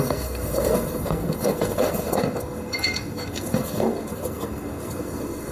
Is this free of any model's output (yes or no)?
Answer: no